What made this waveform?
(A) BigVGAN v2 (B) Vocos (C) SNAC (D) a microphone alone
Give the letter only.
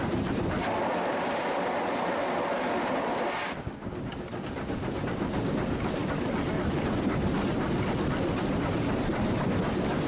D